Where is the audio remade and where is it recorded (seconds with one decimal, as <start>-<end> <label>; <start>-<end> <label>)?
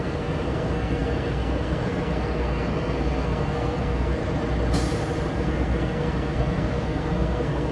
0.0-4.2 remade; 4.2-5.3 recorded; 5.3-7.7 remade